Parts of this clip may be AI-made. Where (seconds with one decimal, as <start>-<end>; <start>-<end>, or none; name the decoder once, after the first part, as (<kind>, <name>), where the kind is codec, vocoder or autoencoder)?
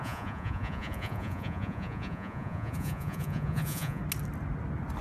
0.0-4.0 (vocoder, Vocos)